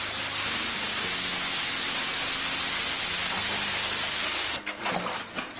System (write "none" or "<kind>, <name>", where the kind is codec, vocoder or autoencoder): none